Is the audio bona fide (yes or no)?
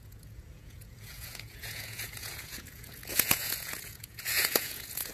no